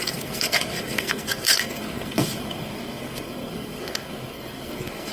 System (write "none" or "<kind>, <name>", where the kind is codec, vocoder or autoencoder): codec, SNAC